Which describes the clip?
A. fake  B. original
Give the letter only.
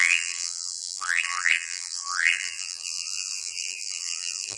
A